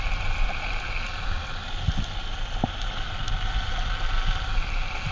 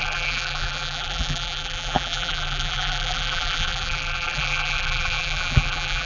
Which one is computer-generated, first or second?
second